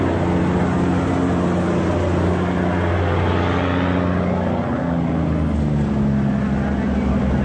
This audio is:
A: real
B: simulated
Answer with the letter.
A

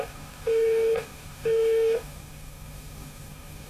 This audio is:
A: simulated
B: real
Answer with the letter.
A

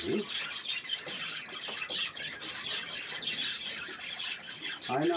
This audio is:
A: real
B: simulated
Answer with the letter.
A